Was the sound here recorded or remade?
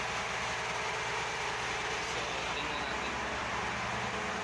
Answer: recorded